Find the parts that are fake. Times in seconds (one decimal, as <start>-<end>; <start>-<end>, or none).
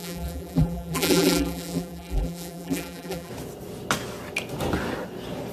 0.0-3.3